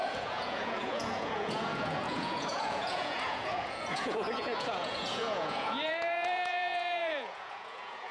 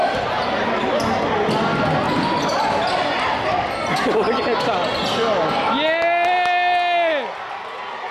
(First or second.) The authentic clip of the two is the second